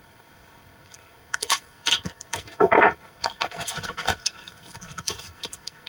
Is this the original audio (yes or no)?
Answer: no